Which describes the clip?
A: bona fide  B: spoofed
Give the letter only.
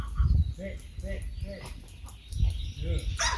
A